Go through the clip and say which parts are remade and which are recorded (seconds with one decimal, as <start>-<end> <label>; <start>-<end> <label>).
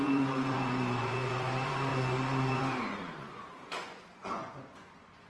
0.0-5.3 remade